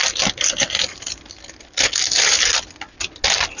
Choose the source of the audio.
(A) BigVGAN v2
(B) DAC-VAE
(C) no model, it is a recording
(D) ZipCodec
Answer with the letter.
C